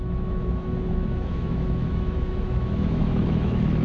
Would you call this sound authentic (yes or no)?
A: no